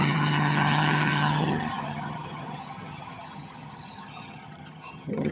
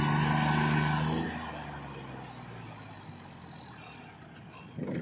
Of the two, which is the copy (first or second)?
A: first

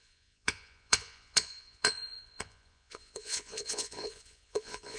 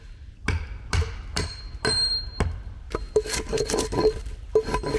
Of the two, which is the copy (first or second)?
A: first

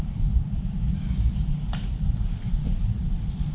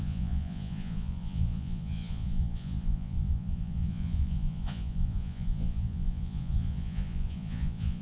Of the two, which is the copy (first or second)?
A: second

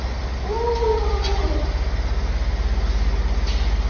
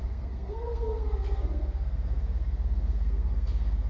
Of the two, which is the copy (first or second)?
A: second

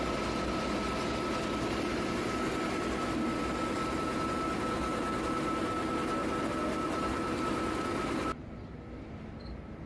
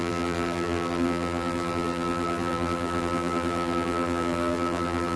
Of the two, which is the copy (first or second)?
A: second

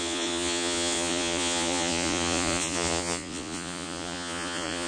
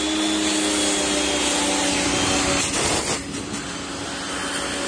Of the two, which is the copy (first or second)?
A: first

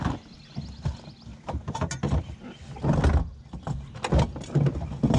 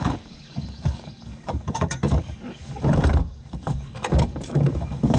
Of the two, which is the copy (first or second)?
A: second